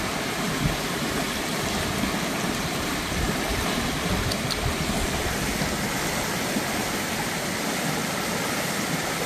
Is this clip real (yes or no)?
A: yes